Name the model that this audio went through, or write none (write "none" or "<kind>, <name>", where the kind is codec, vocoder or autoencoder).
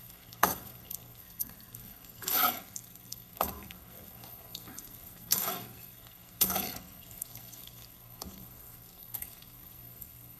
codec, SNAC